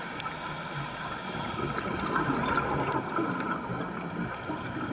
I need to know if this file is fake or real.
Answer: real